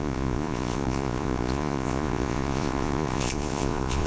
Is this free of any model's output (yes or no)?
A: no